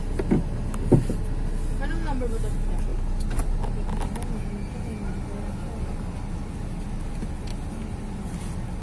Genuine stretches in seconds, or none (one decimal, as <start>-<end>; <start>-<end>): 0.0-8.8